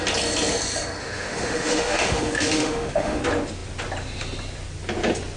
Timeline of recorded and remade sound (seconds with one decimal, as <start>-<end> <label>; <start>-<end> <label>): 0.0-1.0 recorded; 1.0-3.2 remade; 3.2-5.4 recorded

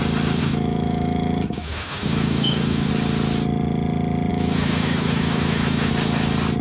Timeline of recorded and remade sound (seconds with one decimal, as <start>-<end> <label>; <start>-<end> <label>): 0.0-0.4 recorded; 0.4-2.9 remade; 2.9-4.3 recorded; 4.3-5.9 remade; 5.9-6.6 recorded